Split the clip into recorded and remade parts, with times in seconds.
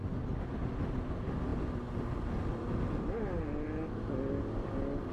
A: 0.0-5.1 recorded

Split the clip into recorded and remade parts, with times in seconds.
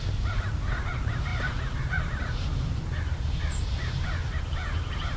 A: 0.0-5.2 remade